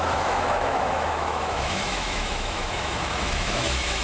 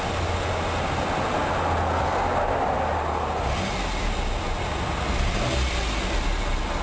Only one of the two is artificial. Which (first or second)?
first